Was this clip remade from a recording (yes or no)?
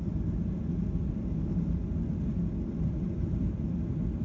no